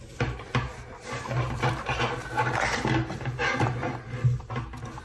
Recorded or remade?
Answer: recorded